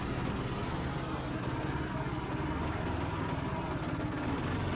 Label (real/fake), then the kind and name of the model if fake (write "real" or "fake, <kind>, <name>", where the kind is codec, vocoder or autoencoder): real